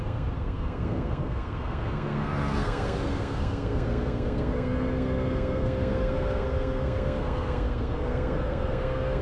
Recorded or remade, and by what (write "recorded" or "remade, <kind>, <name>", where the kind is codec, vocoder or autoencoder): remade, codec, SNAC